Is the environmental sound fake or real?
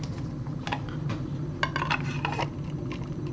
real